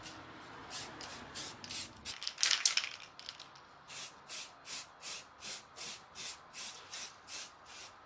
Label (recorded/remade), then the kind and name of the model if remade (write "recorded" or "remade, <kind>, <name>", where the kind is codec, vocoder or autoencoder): recorded